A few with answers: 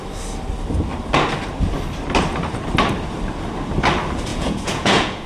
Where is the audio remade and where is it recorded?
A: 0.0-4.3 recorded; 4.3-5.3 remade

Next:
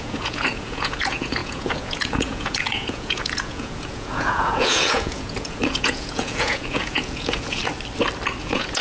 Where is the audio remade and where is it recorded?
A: 0.0-7.6 remade; 7.6-8.4 recorded; 8.4-8.8 remade